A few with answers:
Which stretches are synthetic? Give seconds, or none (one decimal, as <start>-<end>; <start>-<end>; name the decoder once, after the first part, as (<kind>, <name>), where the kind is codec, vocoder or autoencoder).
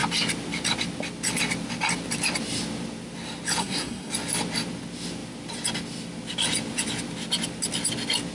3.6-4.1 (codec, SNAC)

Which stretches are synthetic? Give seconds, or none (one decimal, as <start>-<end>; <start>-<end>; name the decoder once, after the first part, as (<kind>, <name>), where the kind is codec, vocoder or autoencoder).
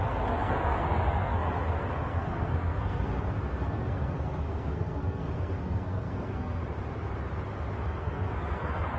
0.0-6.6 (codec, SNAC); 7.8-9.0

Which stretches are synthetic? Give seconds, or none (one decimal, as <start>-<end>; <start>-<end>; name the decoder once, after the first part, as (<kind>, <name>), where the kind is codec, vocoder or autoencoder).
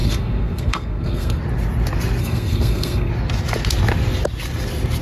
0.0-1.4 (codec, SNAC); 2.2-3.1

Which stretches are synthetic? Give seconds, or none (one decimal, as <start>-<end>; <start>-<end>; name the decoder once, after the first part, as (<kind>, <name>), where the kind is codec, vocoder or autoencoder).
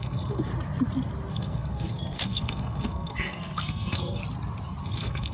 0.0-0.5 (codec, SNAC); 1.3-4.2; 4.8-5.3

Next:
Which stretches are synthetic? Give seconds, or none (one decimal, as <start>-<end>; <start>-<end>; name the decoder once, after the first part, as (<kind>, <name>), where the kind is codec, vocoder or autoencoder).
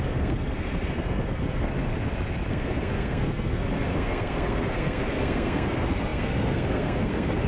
0.0-1.9 (codec, SNAC); 2.5-7.5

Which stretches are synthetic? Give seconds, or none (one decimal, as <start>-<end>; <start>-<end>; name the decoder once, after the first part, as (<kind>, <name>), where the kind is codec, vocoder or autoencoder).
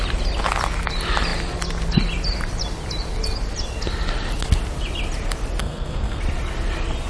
5.6-6.2 (codec, SNAC)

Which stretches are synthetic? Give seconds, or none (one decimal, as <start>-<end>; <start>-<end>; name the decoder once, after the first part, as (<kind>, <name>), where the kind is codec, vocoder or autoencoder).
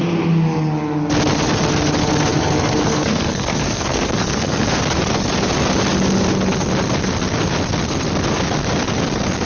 2.3-4.6 (codec, SNAC)